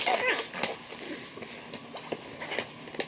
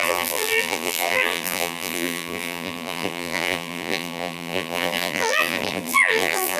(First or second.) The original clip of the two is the first